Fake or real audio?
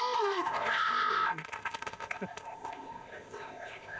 fake